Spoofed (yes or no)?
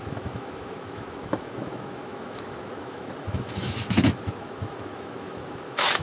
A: yes